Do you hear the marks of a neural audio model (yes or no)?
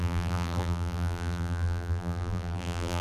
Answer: yes